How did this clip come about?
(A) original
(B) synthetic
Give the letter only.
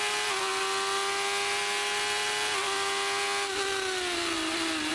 A